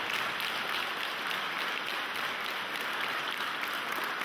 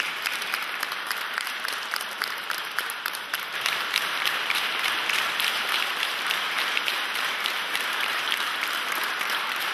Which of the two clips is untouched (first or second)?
first